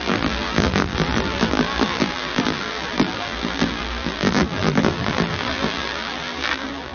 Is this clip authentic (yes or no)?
no